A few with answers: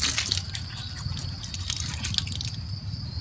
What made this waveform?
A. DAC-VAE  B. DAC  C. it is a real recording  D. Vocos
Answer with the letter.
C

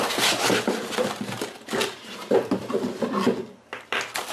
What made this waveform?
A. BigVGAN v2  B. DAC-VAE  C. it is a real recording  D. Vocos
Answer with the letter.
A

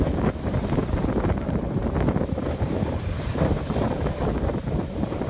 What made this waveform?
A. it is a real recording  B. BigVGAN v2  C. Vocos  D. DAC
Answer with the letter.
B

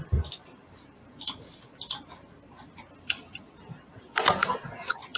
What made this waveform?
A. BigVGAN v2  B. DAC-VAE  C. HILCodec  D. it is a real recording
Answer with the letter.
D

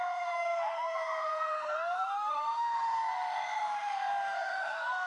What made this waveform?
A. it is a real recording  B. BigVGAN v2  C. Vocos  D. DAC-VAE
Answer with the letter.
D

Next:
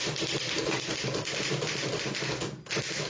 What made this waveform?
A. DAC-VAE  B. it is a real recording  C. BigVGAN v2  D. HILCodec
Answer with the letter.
B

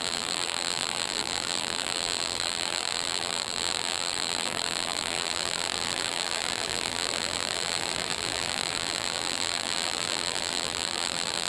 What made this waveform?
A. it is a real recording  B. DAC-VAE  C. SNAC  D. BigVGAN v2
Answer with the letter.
D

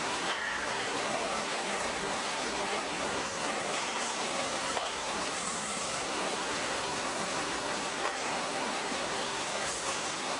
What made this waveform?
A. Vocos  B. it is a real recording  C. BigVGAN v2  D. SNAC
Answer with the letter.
D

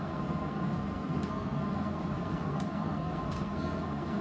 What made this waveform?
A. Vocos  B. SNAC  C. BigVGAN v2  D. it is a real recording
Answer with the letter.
B